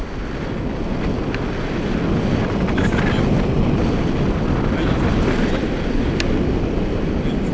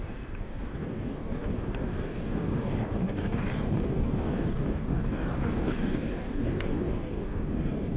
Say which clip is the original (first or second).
first